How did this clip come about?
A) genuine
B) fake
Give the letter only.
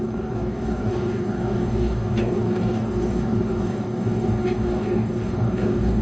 B